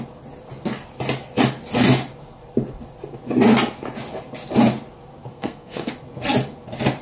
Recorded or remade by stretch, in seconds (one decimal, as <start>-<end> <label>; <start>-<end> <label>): 0.0-5.3 recorded; 5.3-5.9 remade; 5.9-7.0 recorded